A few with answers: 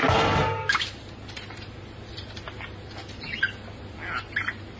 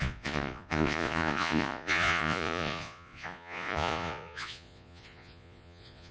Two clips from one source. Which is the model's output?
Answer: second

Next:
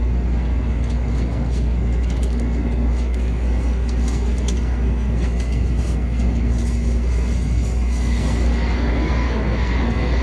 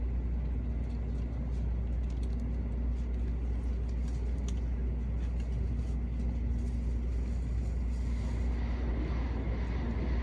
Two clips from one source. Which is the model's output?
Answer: first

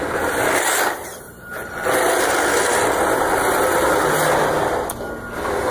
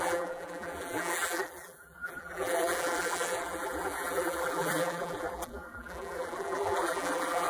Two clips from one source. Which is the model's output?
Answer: second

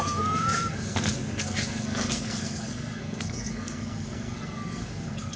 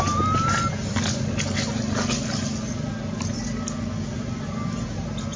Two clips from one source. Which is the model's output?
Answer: first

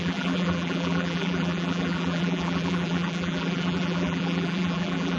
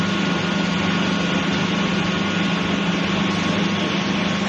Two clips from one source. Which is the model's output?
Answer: first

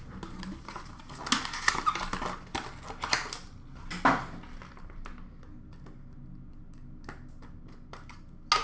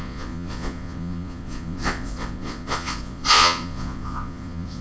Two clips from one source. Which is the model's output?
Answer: second